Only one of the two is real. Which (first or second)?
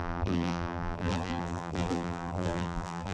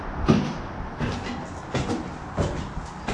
second